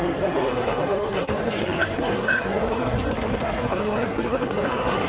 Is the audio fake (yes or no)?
yes